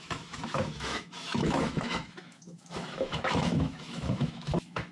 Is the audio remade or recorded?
remade